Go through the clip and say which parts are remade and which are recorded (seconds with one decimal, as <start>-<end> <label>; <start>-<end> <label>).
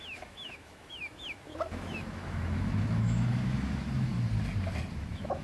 0.0-4.1 remade; 4.1-4.9 recorded; 4.9-5.4 remade